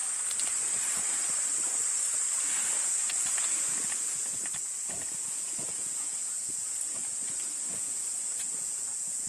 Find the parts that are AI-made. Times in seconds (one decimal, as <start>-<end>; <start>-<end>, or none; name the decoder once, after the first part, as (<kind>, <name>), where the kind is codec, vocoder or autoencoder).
3.3-7.0 (vocoder, Vocos); 7.7-9.3